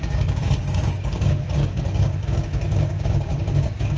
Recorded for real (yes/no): no